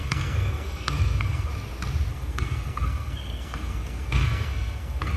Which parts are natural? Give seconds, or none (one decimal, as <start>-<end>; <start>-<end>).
1.5-2.1